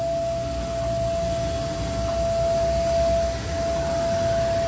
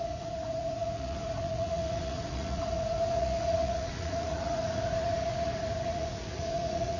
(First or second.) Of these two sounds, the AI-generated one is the second